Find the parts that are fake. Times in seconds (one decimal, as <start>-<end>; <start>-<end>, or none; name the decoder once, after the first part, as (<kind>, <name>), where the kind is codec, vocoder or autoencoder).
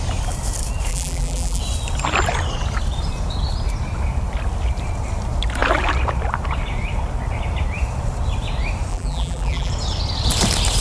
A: 0.9-1.6 (vocoder, BigVGAN v2); 8.9-9.7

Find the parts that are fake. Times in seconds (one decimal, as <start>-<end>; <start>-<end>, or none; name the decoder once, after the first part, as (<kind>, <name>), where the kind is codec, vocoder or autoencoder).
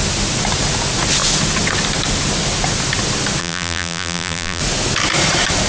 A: 3.4-4.6 (vocoder, BigVGAN v2)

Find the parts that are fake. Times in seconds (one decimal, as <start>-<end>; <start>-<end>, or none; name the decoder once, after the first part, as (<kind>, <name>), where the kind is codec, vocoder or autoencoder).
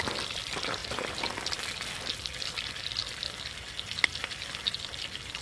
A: none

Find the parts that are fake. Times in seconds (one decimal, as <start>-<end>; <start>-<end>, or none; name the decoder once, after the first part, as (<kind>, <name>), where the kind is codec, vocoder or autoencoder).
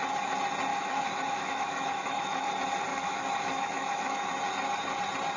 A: 0.7-2.5 (autoencoder, DAC-VAE); 2.9-4.3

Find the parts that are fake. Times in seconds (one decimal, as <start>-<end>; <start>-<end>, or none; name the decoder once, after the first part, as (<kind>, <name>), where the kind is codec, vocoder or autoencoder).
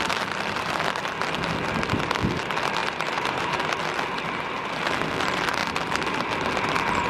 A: 2.8-3.6 (vocoder, BigVGAN v2)